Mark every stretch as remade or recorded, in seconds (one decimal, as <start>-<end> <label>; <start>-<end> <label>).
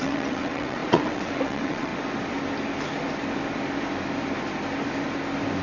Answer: 0.0-1.9 remade; 1.9-5.6 recorded